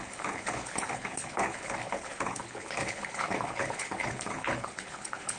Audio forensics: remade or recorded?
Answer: remade